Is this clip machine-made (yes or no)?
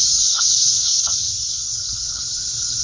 yes